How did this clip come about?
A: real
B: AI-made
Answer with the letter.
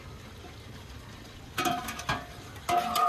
A